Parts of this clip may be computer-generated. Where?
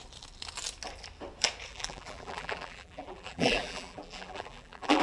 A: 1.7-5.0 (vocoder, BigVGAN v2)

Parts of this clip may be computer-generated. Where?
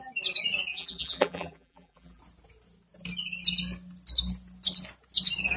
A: 0.7-2.2 (vocoder, BigVGAN v2)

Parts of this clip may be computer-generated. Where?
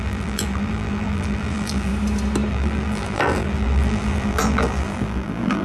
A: 0.0-1.9 (vocoder, BigVGAN v2); 2.5-5.6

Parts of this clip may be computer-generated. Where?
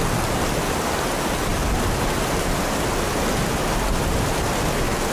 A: none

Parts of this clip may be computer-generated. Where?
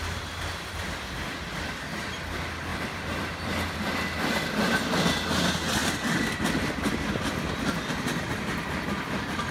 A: 2.7-4.9 (vocoder, BigVGAN v2); 5.8-8.6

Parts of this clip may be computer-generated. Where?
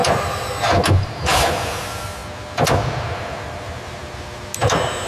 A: none